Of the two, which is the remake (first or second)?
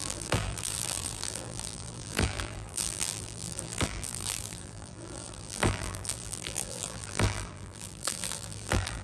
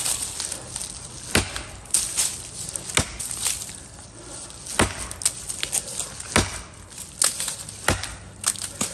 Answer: first